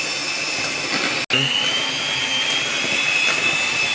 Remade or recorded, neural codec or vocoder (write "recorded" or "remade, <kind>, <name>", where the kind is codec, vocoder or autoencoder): recorded